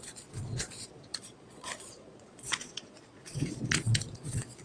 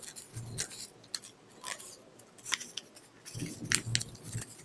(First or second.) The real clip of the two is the second